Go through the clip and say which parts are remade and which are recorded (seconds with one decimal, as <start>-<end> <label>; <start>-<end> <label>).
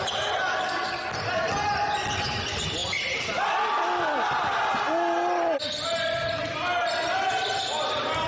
0.0-8.3 recorded